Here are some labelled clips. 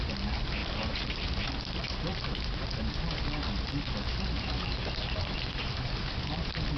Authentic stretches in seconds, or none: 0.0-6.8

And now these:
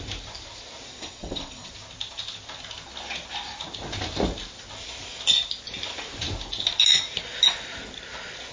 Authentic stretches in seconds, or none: 0.0-0.9; 1.7-8.5

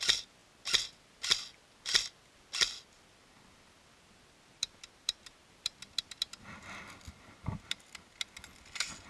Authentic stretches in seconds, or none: 0.0-9.1